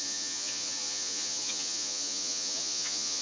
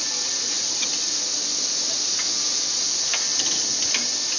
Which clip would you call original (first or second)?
second